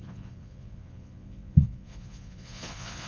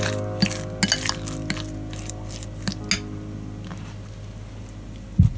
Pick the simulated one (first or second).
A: first